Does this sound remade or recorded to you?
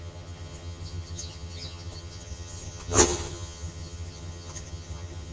remade